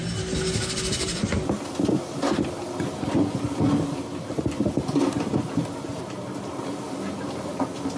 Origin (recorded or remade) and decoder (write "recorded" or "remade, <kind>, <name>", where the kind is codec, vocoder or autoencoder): recorded